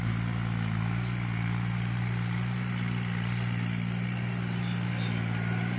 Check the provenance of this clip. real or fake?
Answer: real